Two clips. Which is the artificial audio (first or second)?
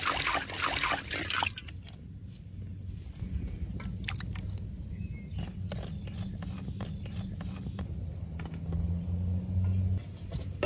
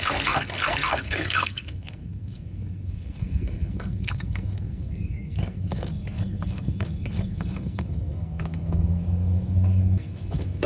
second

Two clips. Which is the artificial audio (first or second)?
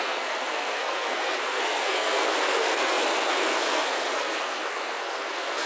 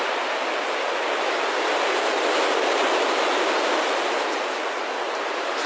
first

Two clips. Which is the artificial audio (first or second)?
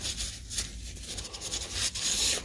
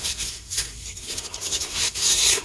second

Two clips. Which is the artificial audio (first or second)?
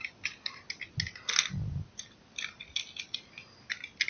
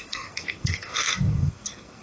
second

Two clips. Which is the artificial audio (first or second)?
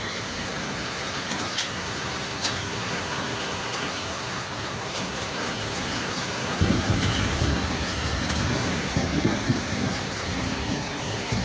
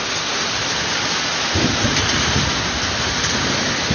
first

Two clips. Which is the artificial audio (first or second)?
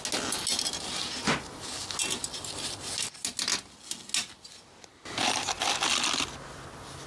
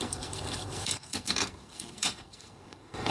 second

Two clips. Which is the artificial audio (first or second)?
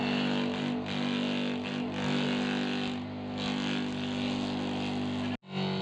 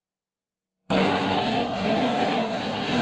second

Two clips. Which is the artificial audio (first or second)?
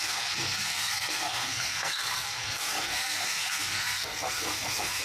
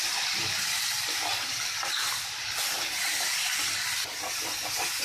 first